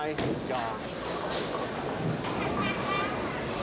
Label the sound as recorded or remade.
recorded